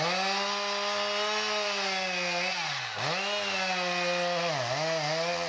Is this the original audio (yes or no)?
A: yes